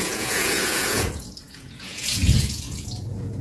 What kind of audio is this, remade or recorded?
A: remade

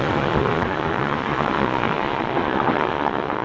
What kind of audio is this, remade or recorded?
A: remade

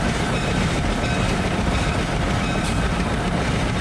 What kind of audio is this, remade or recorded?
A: recorded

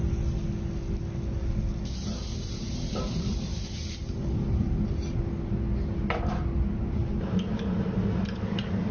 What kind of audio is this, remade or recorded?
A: recorded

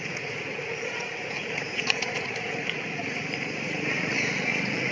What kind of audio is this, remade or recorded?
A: remade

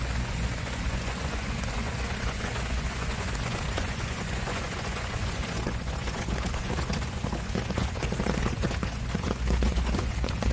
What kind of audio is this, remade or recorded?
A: remade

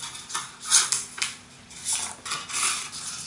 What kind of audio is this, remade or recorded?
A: recorded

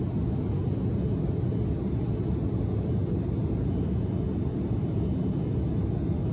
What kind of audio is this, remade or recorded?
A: recorded